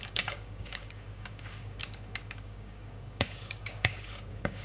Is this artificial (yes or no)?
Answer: yes